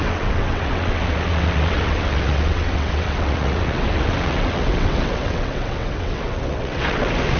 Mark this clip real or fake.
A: fake